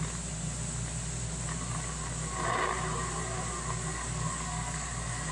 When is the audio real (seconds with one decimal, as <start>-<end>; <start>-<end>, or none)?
0.0-3.9